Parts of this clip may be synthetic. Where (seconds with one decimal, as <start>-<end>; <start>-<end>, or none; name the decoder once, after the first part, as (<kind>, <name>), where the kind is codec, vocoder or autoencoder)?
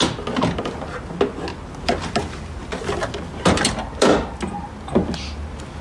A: none